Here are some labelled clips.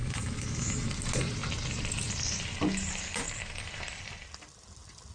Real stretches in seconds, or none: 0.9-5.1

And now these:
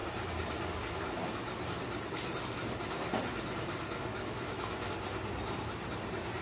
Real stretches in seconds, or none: 0.0-4.1; 4.9-6.4

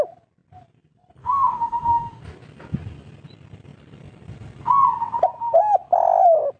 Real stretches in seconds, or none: 0.0-1.2; 2.2-6.6

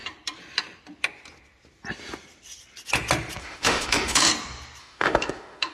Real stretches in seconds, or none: 0.0-3.4; 4.3-4.8

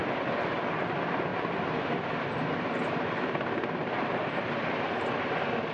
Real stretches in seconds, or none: 0.0-1.3; 2.3-3.8; 5.3-5.7

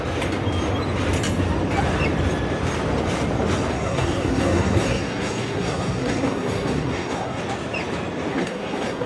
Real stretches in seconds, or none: 0.0-3.7; 7.4-8.3